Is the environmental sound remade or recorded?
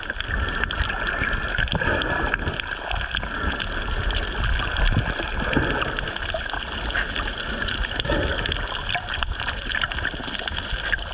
recorded